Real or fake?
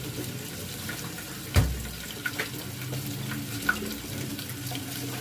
real